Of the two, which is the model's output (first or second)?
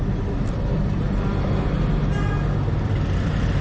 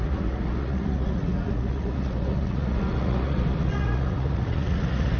second